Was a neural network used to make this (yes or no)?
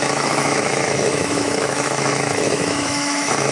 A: yes